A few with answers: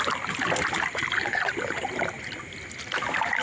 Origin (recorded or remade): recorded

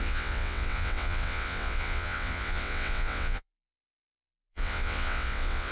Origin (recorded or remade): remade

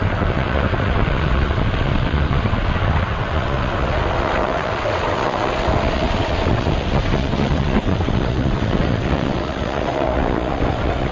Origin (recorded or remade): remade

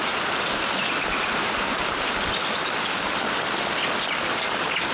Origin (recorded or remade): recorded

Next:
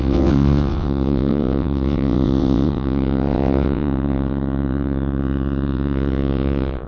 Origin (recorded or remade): remade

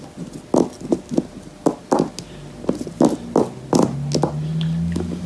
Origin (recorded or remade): recorded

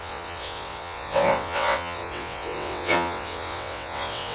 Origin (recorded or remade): remade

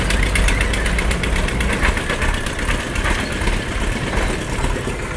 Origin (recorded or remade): recorded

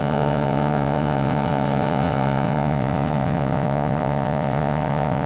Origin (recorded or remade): remade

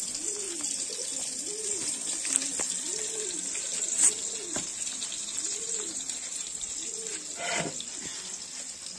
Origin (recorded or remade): recorded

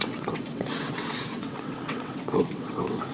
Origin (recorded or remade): remade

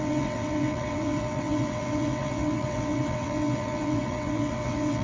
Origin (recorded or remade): remade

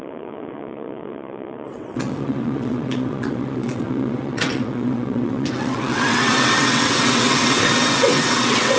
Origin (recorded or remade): remade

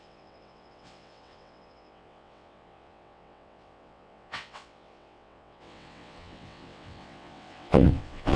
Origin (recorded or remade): remade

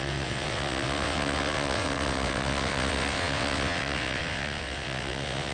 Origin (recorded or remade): remade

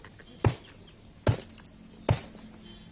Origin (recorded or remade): recorded